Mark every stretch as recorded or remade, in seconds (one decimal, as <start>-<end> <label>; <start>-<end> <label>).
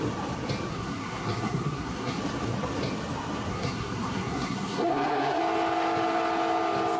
0.0-0.7 recorded; 0.7-2.2 remade; 2.2-3.5 recorded; 3.5-5.4 remade; 5.4-7.0 recorded